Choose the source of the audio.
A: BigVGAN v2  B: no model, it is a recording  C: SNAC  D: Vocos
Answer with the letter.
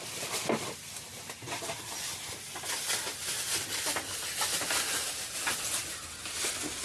B